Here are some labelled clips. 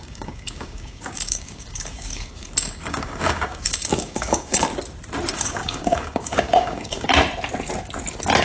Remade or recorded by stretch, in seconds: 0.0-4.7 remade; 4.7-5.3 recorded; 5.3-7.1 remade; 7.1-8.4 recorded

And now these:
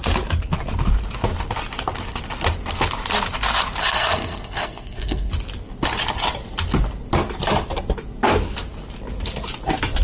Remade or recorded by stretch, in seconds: 0.0-3.8 recorded; 3.8-5.3 remade; 5.3-10.0 recorded

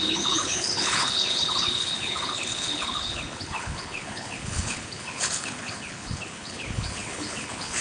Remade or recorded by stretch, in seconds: 0.0-7.8 remade

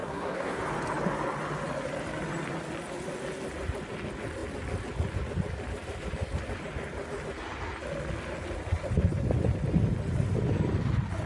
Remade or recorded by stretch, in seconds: 0.0-0.6 remade; 0.6-11.3 recorded

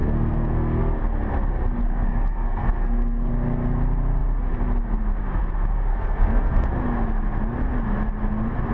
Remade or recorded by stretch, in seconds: 0.0-0.8 remade; 0.8-1.8 recorded; 1.8-3.3 remade; 3.3-5.9 recorded; 5.9-6.7 remade; 6.7-8.7 recorded

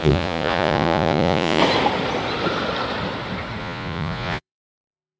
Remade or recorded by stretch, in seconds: 0.0-1.6 remade; 1.6-3.6 recorded; 3.6-5.2 remade

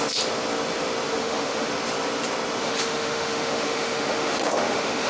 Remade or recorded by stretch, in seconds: 0.0-1.2 recorded; 1.2-1.7 remade; 1.7-2.6 recorded; 2.6-5.1 remade